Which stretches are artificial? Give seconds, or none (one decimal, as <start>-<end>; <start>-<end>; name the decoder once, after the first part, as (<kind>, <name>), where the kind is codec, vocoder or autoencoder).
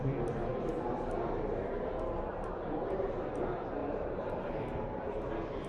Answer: 2.3-3.3 (vocoder, BigVGAN v2); 3.8-5.3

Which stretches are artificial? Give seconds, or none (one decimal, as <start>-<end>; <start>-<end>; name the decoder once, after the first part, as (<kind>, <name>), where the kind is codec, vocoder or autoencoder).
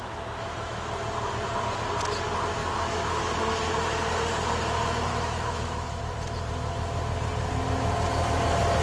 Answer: 0.0-0.9 (autoencoder, DAC-VAE); 2.6-3.3; 5.1-6.0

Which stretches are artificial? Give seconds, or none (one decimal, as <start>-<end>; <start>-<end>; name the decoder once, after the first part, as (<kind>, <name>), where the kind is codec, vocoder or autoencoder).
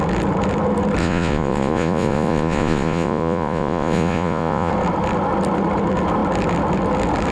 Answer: 1.0-4.7 (vocoder, Vocos)